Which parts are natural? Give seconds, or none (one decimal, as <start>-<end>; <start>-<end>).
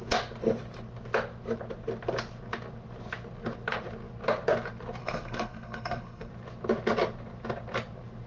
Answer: 0.0-5.0; 6.3-8.3